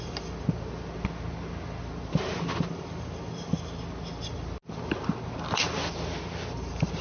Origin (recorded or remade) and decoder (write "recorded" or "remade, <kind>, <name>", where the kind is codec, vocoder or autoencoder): recorded